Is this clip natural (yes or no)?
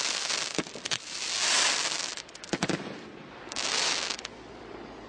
yes